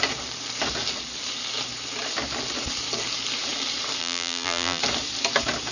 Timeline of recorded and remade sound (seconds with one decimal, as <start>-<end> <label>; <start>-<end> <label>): 0.0-4.0 recorded; 4.0-4.8 remade; 4.8-5.7 recorded